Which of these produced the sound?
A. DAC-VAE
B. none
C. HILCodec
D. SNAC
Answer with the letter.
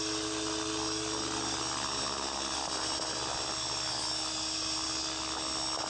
B